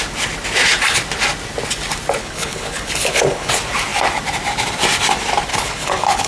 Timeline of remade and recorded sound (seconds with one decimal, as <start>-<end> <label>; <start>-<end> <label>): 0.0-2.2 recorded; 2.2-3.5 remade; 3.5-5.5 recorded; 5.5-6.3 remade